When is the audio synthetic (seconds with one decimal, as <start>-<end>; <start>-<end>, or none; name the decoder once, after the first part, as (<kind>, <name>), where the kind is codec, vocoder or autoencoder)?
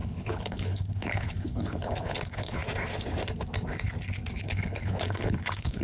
0.0-2.6 (codec, HILCodec); 4.4-5.8